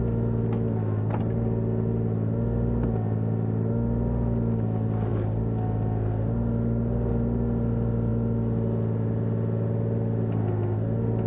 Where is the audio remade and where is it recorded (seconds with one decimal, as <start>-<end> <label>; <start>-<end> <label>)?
0.0-11.3 recorded